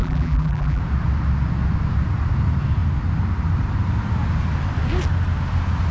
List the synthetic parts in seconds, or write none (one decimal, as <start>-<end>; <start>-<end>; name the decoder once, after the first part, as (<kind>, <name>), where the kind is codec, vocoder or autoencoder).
0.0-0.8 (vocoder, BigVGAN v2)